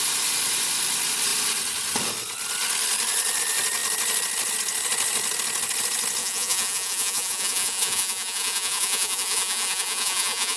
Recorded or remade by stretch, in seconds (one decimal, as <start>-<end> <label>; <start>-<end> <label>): 0.0-6.2 recorded; 6.2-10.6 remade